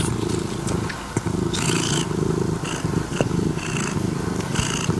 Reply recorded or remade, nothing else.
recorded